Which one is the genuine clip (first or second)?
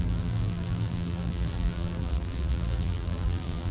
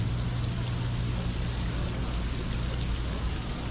second